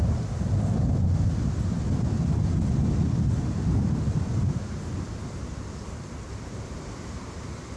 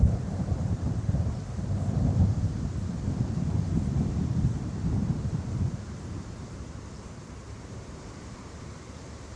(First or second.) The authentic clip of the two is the first